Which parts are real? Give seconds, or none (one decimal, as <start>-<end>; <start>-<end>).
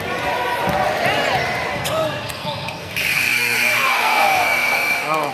0.0-1.7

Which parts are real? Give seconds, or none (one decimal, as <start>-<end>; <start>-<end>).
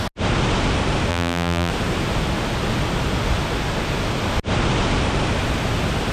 0.0-1.1; 1.7-6.1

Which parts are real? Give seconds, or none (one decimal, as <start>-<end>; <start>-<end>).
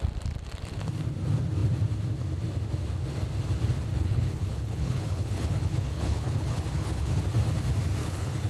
0.0-3.9; 7.2-8.0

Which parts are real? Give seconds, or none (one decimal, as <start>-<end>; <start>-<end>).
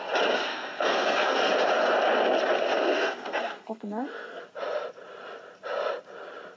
0.0-0.5; 1.4-2.7; 4.4-6.6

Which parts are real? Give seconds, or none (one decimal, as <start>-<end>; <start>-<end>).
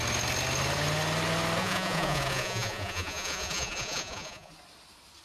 0.0-1.6; 4.5-5.2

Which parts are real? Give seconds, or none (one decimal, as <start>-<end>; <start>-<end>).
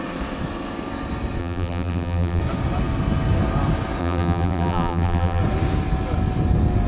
0.0-1.4; 2.4-4.0; 5.4-6.9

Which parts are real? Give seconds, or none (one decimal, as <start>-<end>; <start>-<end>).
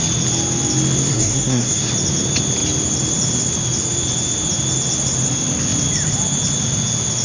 0.0-1.1; 1.9-7.2